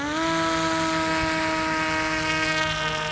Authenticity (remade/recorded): recorded